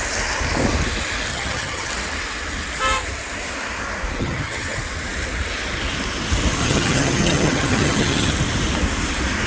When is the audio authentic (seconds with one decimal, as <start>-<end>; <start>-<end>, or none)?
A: 0.0-1.3; 1.9-4.2; 4.8-6.6; 8.3-9.5

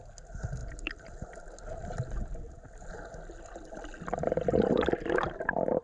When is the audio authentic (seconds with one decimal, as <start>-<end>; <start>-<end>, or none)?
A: 0.0-5.8

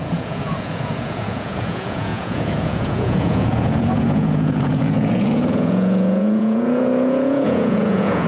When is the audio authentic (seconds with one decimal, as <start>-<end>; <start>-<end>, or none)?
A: none

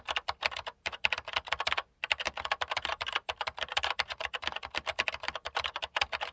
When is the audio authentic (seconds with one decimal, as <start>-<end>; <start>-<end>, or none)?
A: 0.0-2.9; 4.3-6.3

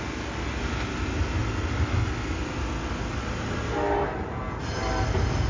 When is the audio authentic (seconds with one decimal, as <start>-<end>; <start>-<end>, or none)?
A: 0.0-5.5

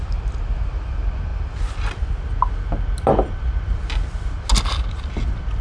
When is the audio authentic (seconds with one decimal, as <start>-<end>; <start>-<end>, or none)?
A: 0.0-5.6

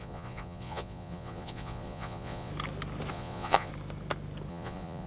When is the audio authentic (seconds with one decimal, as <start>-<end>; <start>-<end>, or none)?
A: 2.5-3.1; 3.7-4.5